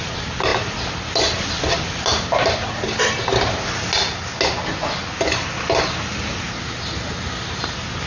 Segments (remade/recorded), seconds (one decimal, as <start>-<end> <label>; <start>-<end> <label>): 0.0-8.1 recorded